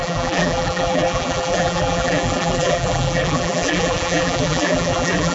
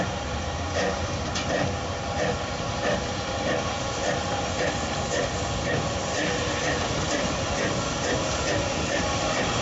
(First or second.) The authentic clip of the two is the second